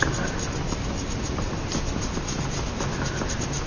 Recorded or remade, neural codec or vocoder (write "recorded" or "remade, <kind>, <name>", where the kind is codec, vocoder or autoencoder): recorded